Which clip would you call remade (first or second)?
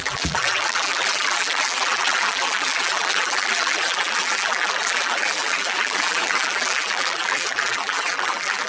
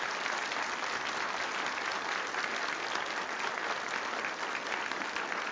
first